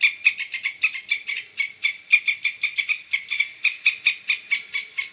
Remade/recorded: recorded